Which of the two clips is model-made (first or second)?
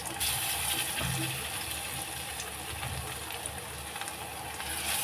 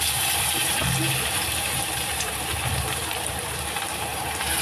second